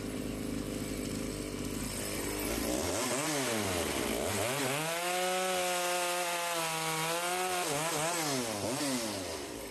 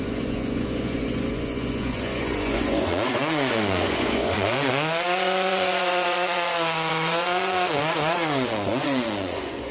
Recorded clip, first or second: first